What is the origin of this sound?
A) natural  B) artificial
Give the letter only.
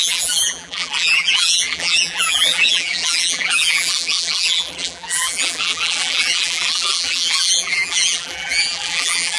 B